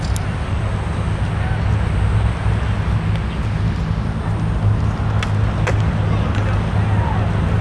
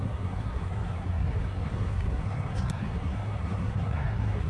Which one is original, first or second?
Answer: first